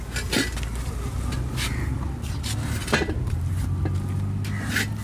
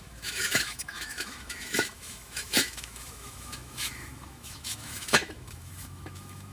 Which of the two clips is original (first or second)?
first